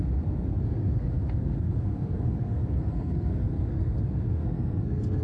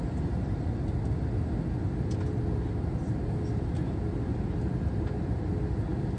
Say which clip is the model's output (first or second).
first